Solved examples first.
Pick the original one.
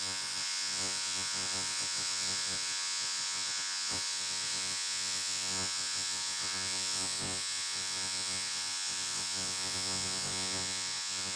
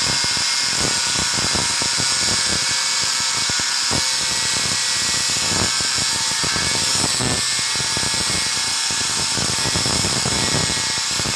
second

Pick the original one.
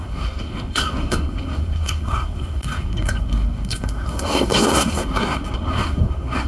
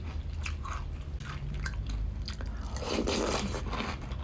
second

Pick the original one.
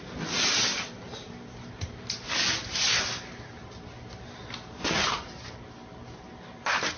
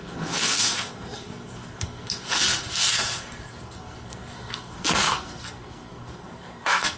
first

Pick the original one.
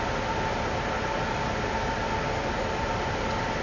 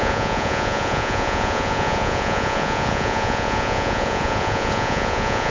first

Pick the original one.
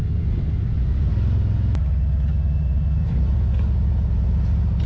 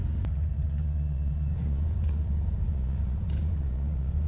first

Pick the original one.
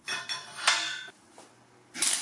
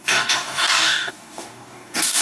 first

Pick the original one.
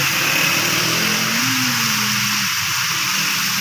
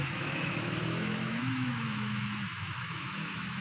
first